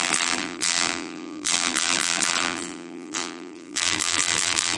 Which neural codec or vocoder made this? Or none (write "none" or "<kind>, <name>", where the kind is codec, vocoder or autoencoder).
vocoder, BigVGAN v2